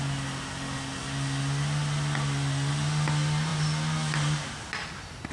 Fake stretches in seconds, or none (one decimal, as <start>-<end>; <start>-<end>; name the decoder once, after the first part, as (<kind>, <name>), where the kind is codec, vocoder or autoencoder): none